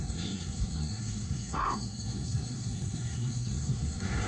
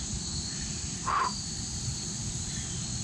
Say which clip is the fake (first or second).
first